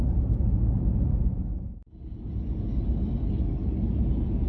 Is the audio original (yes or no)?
yes